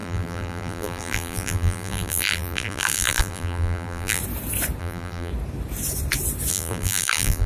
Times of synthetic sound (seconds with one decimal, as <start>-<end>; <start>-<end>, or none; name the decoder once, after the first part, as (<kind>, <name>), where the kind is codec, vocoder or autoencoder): 0.0-4.2 (vocoder, BigVGAN v2); 4.8-5.3; 6.5-7.5